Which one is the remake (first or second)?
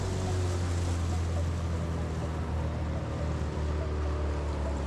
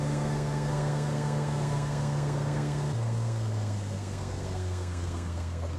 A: second